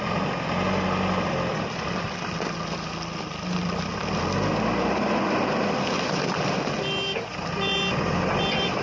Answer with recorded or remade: recorded